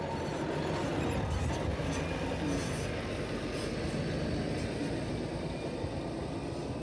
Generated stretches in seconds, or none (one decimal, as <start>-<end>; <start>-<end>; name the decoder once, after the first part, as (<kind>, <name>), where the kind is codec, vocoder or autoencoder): none